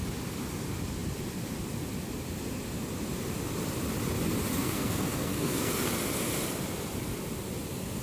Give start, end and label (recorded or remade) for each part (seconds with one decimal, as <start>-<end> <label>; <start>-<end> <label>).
0.0-4.6 recorded; 4.6-5.9 remade; 5.9-8.0 recorded